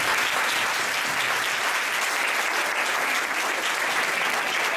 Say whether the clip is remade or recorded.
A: recorded